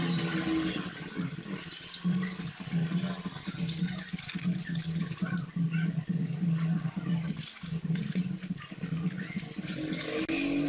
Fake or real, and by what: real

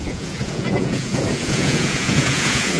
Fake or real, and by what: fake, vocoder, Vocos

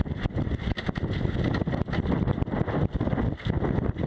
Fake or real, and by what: real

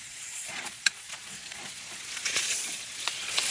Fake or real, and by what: fake, vocoder, Vocos